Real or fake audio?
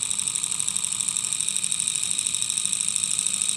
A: real